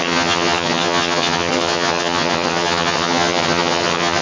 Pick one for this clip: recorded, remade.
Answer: remade